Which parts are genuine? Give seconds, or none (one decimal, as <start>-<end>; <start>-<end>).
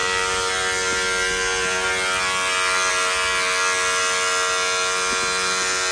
0.0-5.9